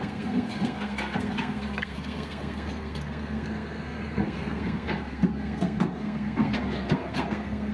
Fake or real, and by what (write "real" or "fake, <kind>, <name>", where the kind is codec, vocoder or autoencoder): fake, codec, SNAC